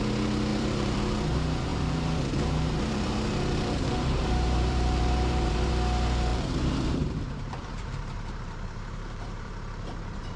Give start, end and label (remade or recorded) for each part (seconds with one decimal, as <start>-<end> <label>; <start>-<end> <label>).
0.0-0.5 recorded; 0.5-1.0 remade; 1.0-1.7 recorded; 1.7-5.7 remade; 5.7-6.3 recorded; 6.3-10.4 remade